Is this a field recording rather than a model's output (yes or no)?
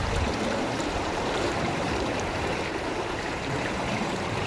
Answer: no